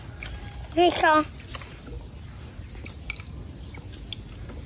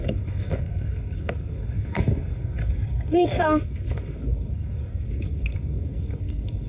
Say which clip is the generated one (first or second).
second